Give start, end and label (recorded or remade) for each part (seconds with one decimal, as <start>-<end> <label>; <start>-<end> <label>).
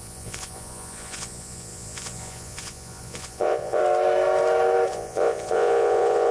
0.0-3.8 remade; 3.8-4.9 recorded; 4.9-6.3 remade